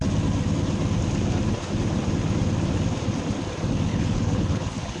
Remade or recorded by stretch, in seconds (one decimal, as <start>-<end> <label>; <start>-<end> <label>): 0.0-3.9 recorded; 3.9-5.0 remade